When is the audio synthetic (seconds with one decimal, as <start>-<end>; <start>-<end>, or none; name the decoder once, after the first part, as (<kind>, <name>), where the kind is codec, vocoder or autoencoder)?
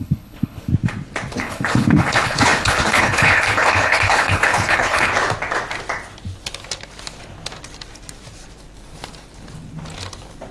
0.0-0.7 (codec, HILCodec); 1.4-5.1